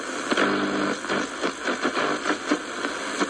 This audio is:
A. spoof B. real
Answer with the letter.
B